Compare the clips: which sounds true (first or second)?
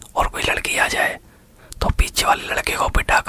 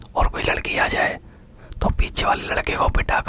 second